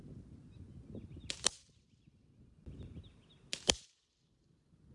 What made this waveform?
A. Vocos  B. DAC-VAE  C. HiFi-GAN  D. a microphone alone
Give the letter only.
D